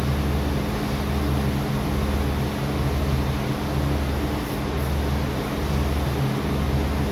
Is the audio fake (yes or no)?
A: no